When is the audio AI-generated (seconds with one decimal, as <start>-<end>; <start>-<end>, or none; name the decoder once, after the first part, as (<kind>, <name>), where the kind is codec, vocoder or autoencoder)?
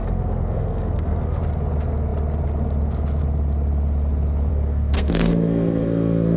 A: 0.0-1.4 (codec, SNAC); 4.5-6.4